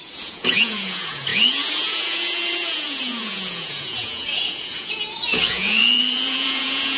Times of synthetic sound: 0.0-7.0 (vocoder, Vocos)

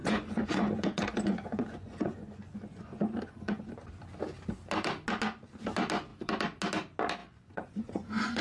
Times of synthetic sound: 0.0-3.7 (vocoder, Vocos); 7.2-8.4

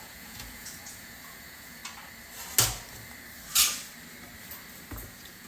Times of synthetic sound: 0.0-1.8 (vocoder, Vocos); 5.1-5.5

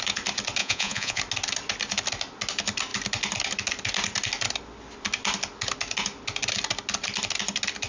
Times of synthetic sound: 0.6-1.2 (vocoder, Vocos)